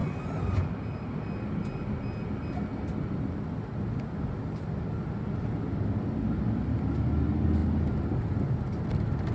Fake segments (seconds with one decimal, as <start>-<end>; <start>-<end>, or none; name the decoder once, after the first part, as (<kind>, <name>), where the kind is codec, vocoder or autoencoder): none